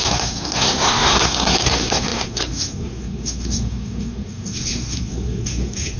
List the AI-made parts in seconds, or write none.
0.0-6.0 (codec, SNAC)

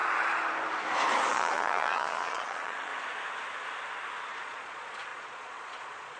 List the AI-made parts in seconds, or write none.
1.3-2.9 (vocoder, Vocos); 4.3-6.2